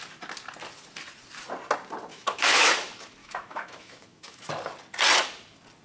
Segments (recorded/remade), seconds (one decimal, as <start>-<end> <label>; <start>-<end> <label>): 0.0-2.1 recorded; 2.1-2.7 remade; 2.7-3.2 recorded; 3.2-4.4 remade; 4.4-5.8 recorded